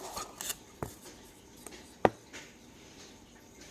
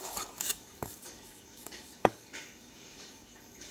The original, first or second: first